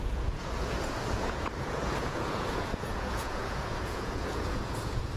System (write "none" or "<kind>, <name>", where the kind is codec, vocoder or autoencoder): vocoder, Vocos